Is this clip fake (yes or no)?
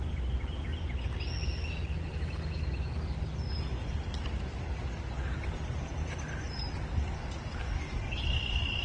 no